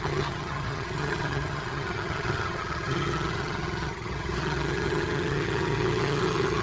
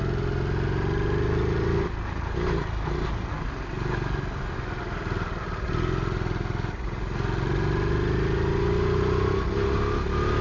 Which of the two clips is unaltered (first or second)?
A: second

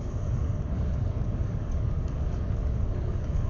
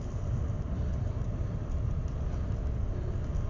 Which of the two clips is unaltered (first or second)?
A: second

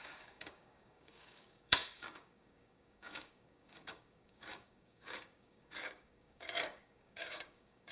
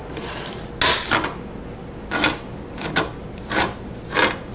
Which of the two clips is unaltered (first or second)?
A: second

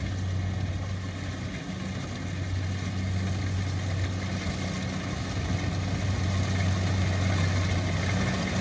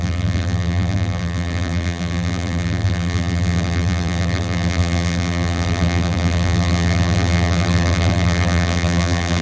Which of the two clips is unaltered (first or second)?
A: first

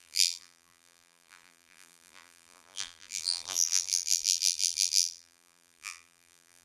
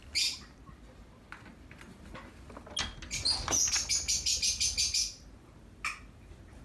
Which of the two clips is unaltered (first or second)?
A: second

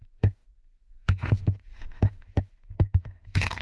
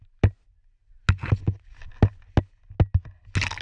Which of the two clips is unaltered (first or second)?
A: second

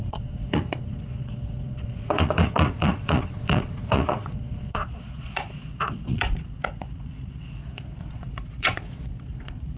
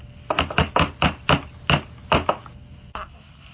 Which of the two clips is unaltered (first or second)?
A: second